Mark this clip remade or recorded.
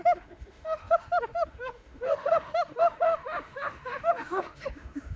remade